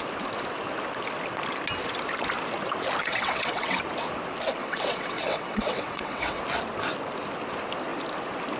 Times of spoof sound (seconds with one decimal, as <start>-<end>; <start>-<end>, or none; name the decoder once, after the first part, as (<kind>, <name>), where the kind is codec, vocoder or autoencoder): 3.0-3.8 (vocoder, WaveNeXt); 4.6-6.4